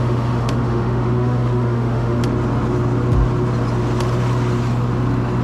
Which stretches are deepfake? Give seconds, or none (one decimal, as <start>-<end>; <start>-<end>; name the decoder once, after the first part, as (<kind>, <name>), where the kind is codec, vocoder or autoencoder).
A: 0.0-2.2 (autoencoder, DAC-VAE)